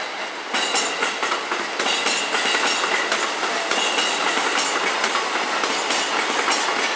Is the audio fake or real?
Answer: real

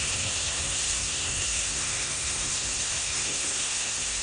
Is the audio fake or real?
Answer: fake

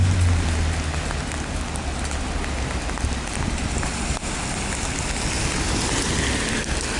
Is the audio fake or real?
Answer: real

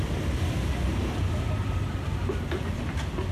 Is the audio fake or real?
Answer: real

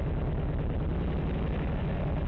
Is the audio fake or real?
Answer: real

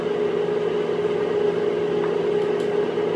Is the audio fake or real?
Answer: real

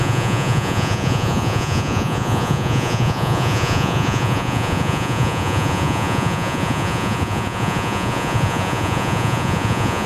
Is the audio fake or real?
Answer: fake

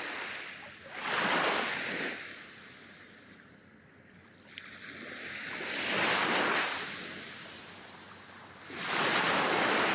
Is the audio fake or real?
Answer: real